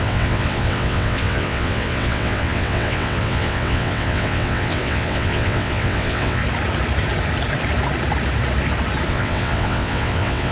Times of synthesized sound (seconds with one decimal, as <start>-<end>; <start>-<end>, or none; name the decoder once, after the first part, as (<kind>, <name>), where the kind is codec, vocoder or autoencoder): 0.0-6.4 (vocoder, WaveNeXt); 9.1-10.5